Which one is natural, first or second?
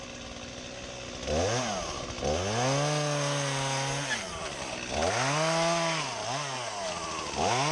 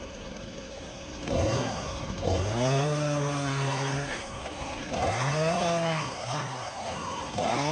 first